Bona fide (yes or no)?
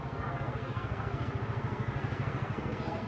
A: no